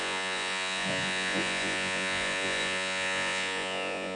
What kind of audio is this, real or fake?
fake